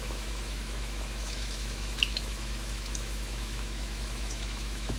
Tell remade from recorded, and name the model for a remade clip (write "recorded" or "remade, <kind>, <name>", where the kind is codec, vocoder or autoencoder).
remade, autoencoder, DAC-VAE